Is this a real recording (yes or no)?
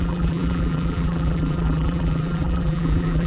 no